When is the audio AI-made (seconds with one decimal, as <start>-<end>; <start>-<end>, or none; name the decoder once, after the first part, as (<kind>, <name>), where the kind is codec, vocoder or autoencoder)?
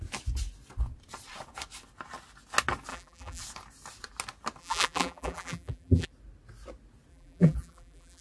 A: 2.9-3.4 (vocoder, BigVGAN v2); 4.6-6.1; 7.1-8.2